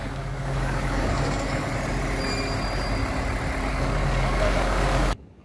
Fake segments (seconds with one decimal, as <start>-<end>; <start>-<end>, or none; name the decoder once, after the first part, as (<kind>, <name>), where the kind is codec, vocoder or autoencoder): 0.0-1.7 (codec, DAC); 3.7-5.4